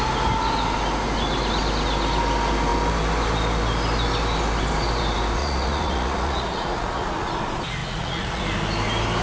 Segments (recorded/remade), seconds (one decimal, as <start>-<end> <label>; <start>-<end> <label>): 0.0-5.4 recorded; 5.4-7.3 remade; 7.3-7.8 recorded; 7.8-8.4 remade; 8.4-9.2 recorded